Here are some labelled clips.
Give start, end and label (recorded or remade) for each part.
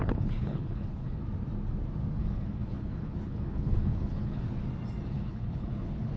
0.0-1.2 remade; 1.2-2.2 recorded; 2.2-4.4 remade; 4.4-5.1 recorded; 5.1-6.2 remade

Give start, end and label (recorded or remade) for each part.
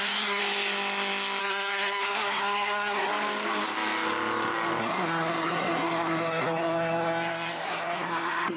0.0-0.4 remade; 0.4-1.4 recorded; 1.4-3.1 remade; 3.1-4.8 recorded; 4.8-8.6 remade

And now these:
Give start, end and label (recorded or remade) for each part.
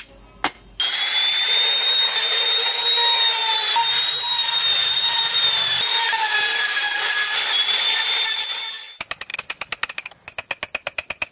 0.0-1.1 recorded; 1.1-2.0 remade; 2.0-4.8 recorded; 4.8-8.8 remade; 8.8-11.3 recorded